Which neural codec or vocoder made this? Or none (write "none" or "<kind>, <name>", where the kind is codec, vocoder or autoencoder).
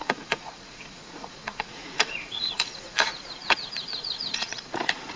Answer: vocoder, Vocos